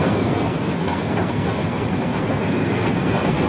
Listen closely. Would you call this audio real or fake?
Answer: fake